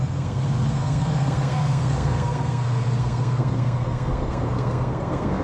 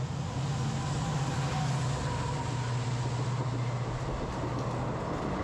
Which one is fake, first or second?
first